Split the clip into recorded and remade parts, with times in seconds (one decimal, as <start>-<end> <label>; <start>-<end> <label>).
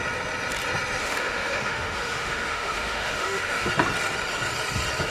0.0-1.0 recorded; 1.0-3.7 remade; 3.7-5.1 recorded